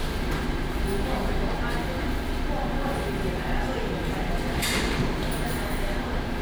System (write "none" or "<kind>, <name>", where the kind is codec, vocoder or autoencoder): none